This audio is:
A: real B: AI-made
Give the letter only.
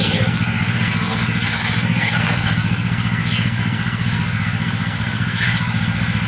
B